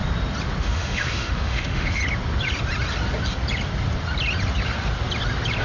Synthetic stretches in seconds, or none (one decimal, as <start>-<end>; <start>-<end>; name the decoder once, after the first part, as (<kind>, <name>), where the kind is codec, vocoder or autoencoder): 0.6-2.0 (autoencoder, DAC-VAE)